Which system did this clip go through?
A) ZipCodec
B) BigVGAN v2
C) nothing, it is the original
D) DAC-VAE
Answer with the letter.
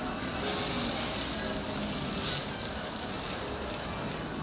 C